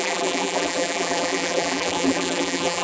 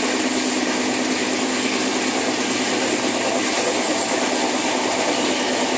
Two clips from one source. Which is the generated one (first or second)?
first